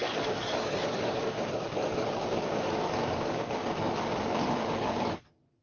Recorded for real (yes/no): no